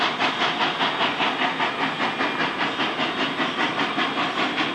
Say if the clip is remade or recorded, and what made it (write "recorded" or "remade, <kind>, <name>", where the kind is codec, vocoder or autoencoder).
recorded